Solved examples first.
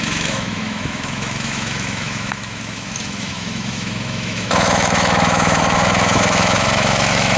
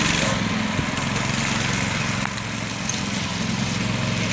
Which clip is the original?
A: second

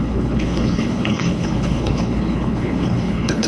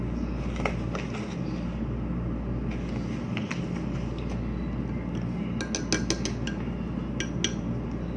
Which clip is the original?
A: second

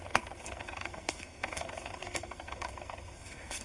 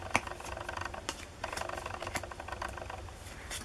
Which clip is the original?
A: second